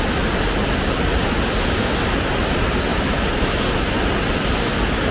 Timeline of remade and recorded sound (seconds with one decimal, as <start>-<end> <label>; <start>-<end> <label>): 0.0-5.1 recorded